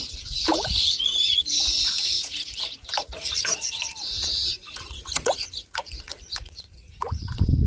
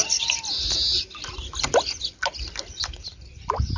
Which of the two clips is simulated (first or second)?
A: first